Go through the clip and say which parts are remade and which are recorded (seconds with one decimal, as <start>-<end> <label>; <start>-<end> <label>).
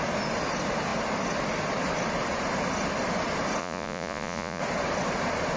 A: 0.0-3.6 recorded; 3.6-4.6 remade; 4.6-5.6 recorded